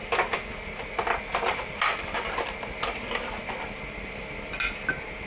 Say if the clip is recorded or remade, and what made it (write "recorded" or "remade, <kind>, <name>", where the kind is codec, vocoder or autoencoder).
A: recorded